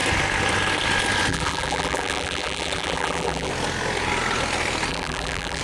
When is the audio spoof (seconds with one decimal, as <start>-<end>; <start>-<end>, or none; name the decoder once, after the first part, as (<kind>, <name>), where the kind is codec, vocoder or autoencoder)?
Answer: 1.3-3.5 (vocoder, BigVGAN v2); 4.9-5.6